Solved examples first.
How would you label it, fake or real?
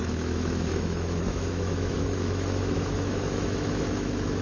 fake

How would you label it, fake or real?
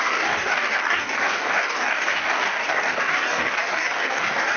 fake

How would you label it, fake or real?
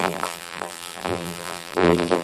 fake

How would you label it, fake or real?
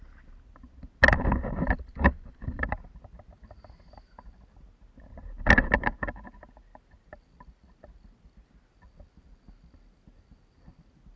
real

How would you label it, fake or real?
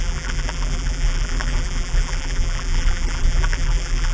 fake